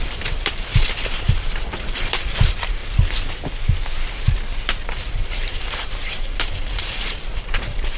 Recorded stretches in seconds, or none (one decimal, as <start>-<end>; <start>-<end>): 2.8-4.8